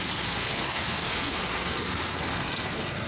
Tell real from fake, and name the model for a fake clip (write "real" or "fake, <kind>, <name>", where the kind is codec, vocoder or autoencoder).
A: fake, codec, SNAC